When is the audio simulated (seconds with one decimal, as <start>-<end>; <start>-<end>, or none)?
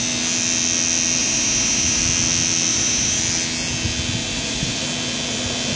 1.2-2.0; 2.7-3.2; 4.2-4.8